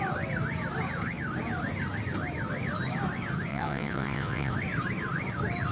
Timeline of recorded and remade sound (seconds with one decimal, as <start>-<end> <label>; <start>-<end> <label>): 0.0-3.5 recorded; 3.5-4.5 remade; 4.5-5.7 recorded